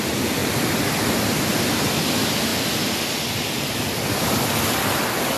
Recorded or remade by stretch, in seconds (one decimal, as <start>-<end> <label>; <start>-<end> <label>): 0.0-2.5 remade; 2.5-4.1 recorded; 4.1-5.4 remade